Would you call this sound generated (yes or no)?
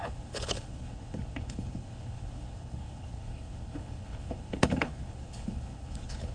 yes